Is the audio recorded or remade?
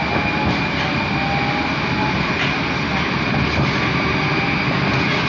recorded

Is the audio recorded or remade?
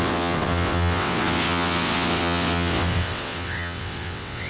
remade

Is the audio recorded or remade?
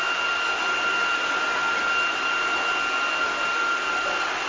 recorded